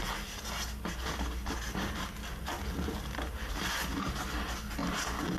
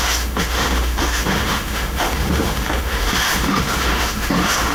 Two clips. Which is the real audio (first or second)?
first